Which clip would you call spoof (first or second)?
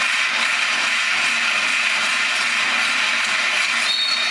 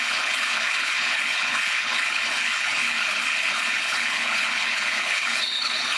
second